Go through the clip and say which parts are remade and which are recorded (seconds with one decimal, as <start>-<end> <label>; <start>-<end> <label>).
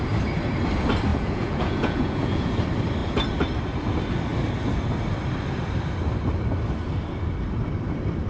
0.0-1.1 recorded; 1.1-2.5 remade; 2.5-8.3 recorded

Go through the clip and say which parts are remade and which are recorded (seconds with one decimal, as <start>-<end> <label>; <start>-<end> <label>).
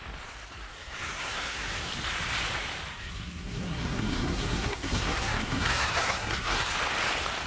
0.0-0.7 recorded; 0.7-1.9 remade; 1.9-2.9 recorded; 2.9-6.7 remade; 6.7-7.5 recorded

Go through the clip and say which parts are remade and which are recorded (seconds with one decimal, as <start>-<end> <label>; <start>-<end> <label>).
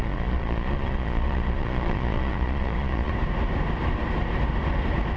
0.0-3.1 remade; 3.1-5.2 recorded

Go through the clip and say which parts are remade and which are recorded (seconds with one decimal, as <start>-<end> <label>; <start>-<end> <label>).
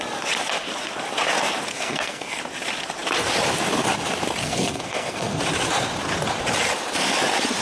0.0-1.7 recorded; 1.7-2.4 remade; 2.4-4.4 recorded; 4.4-5.4 remade; 5.4-7.6 recorded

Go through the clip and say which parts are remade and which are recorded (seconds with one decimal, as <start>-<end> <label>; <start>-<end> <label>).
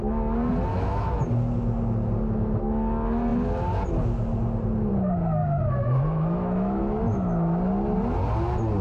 0.0-0.7 recorded; 0.7-1.2 remade; 1.2-5.4 recorded; 5.4-6.8 remade; 6.8-8.8 recorded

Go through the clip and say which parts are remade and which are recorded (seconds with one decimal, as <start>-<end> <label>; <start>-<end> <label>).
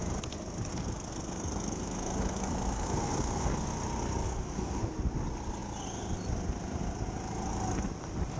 0.0-0.7 recorded; 0.7-3.5 remade; 3.5-4.2 recorded; 4.2-4.8 remade; 4.8-8.4 recorded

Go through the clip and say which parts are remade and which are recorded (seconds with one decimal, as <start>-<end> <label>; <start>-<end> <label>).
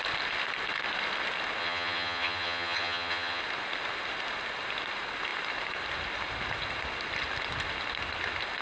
0.0-1.6 recorded; 1.6-3.4 remade; 3.4-8.6 recorded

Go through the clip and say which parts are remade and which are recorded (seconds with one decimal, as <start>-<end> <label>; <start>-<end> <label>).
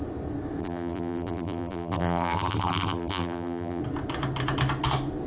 0.0-0.6 recorded; 0.6-3.8 remade; 3.8-5.3 recorded